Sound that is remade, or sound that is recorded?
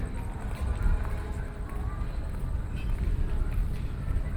recorded